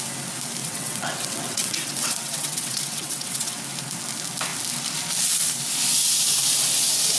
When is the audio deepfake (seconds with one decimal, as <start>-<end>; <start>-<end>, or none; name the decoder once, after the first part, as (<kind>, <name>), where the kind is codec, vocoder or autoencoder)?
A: 0.6-3.6 (vocoder, WaveNeXt)